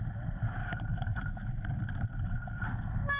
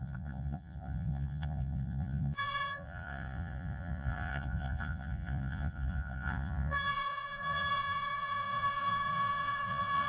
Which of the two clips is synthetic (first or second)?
second